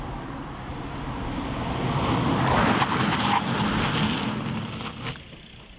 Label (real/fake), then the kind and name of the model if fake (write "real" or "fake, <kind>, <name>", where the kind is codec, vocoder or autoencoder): real